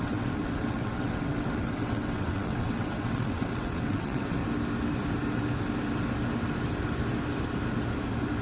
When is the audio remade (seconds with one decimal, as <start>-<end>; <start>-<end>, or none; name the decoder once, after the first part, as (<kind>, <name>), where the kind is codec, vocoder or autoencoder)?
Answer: 0.0-4.4 (vocoder, WaveNeXt)

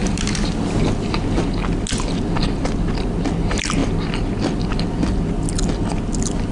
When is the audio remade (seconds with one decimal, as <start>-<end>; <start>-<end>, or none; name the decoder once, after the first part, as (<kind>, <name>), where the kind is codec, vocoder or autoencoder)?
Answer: none

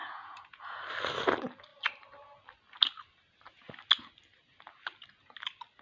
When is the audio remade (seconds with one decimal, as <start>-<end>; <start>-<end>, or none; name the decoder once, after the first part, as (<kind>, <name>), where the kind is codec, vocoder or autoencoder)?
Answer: 0.0-0.8 (vocoder, Vocos)

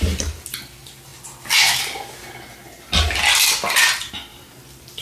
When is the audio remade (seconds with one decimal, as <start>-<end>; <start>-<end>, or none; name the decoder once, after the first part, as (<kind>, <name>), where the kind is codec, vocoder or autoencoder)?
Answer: none

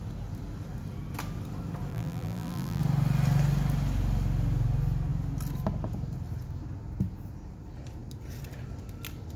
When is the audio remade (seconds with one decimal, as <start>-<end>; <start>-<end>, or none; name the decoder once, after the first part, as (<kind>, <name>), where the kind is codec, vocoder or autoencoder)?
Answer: 1.9-2.8 (vocoder, BigVGAN v2)